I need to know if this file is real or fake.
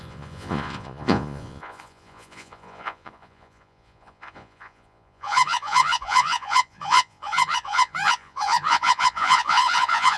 fake